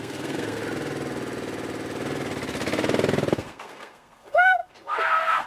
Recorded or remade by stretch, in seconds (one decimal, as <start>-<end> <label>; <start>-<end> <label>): 0.0-0.6 remade; 0.6-3.3 recorded; 3.3-5.5 remade